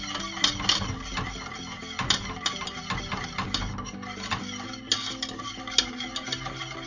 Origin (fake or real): real